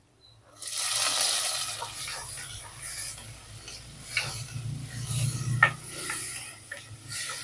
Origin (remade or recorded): recorded